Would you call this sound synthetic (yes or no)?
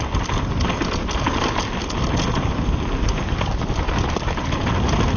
no